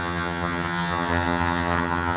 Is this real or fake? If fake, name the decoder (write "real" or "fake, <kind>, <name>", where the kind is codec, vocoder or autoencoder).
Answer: fake, vocoder, HiFi-GAN